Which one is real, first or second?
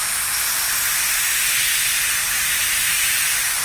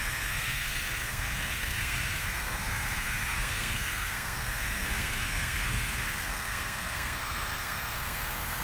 first